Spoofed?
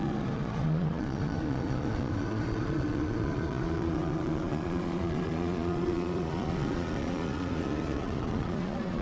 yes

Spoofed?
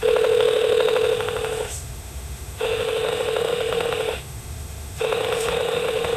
yes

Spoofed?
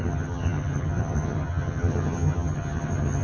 yes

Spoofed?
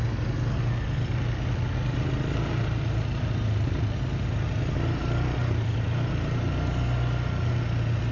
no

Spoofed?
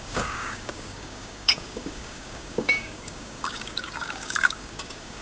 yes